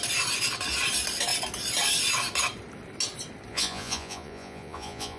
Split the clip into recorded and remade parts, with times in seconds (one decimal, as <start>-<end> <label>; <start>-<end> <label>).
0.0-3.5 recorded; 3.5-5.2 remade